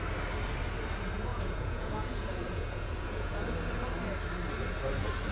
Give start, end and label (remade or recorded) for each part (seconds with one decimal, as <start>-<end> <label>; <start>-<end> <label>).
0.0-1.3 recorded; 1.3-3.4 remade; 3.4-5.3 recorded